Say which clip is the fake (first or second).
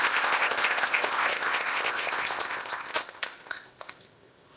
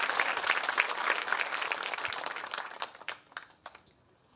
first